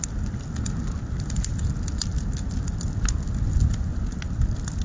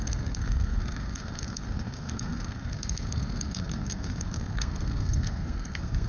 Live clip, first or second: first